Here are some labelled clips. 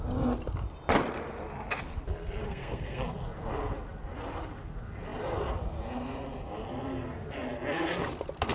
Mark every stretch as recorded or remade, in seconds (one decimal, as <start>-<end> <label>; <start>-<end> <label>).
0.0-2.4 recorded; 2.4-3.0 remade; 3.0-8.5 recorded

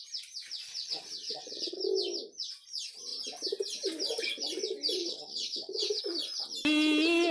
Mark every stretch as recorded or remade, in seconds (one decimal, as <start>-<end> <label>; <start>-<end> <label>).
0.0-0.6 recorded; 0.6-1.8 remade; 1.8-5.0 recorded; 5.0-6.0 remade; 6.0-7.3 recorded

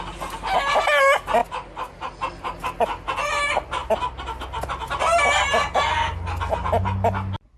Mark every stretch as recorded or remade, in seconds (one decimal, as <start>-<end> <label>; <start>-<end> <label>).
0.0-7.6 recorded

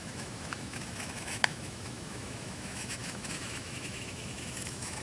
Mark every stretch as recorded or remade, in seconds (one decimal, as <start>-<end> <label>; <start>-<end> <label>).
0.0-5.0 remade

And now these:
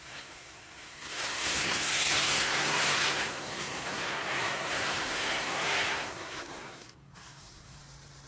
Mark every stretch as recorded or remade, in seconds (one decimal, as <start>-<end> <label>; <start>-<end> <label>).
0.0-7.8 remade; 7.8-8.3 recorded

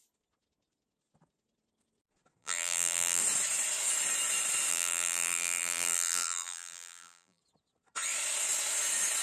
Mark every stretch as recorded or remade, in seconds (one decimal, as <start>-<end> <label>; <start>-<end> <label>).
0.0-2.4 recorded; 2.4-3.2 remade; 3.2-4.7 recorded; 4.7-7.4 remade; 7.4-9.2 recorded

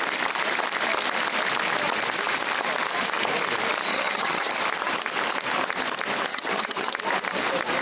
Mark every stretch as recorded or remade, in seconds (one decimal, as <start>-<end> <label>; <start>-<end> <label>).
0.0-3.9 recorded; 3.9-4.5 remade; 4.5-6.3 recorded; 6.3-6.9 remade; 6.9-7.8 recorded

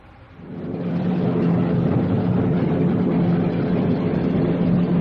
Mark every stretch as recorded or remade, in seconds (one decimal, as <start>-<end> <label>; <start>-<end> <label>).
0.0-5.0 recorded